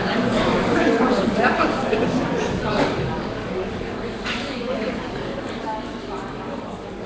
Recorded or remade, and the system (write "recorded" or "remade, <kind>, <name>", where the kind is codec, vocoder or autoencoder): remade, codec, DAC